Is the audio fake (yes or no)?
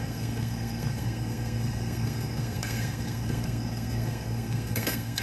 yes